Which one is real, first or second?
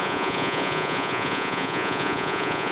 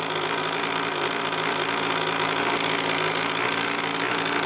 second